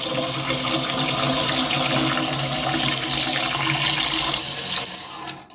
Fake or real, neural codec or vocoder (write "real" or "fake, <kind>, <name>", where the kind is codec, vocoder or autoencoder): real